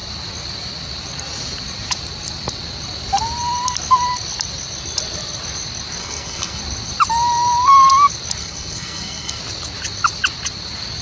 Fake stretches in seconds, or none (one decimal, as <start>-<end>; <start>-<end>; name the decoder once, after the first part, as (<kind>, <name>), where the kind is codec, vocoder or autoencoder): 6.0-6.6 (codec, SNAC); 8.4-9.4